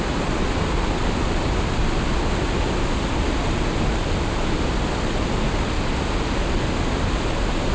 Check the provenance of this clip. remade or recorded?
recorded